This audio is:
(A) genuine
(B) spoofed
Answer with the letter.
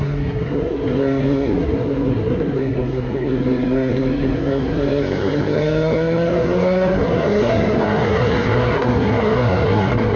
B